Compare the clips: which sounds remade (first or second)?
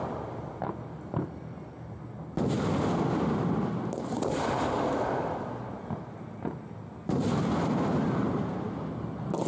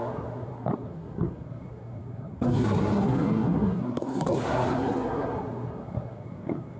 second